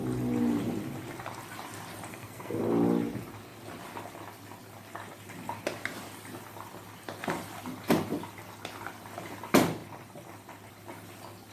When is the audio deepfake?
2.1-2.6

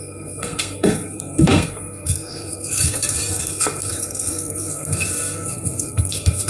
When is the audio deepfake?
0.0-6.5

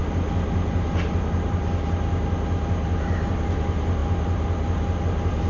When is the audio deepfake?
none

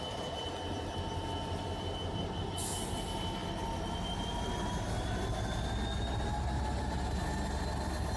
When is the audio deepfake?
none

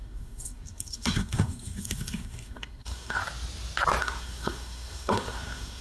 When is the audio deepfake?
0.0-3.2; 4.0-5.8